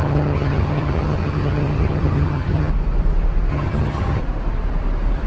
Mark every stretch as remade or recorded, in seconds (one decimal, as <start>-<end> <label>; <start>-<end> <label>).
0.0-2.7 remade; 2.7-3.5 recorded; 3.5-4.2 remade; 4.2-5.3 recorded